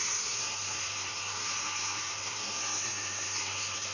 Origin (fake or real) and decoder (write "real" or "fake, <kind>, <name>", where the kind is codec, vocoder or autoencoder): fake, codec, SNAC